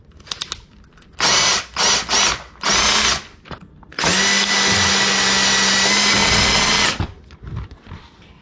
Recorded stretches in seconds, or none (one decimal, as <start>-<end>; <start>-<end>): 0.0-8.4